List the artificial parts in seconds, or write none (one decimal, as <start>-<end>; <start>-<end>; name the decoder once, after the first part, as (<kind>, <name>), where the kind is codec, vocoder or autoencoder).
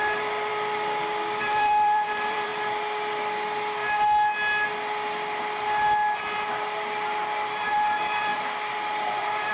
0.0-0.5 (vocoder, BigVGAN v2); 1.4-2.5; 7.7-8.3; 9.1-9.5